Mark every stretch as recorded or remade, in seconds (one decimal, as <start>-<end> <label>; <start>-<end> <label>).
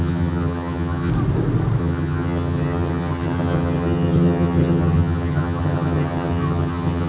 0.0-1.1 remade; 1.1-1.8 recorded; 1.8-7.1 remade